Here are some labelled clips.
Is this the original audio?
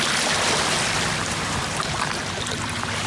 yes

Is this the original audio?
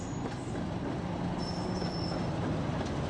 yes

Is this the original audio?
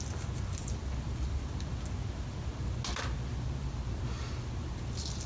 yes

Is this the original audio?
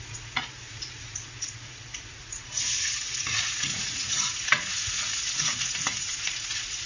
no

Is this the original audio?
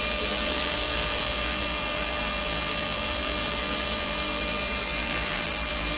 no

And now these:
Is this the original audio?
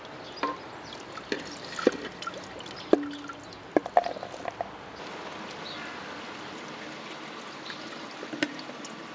yes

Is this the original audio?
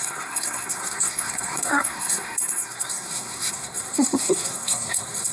no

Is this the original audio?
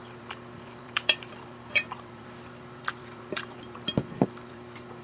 no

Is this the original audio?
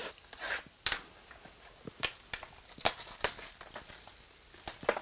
yes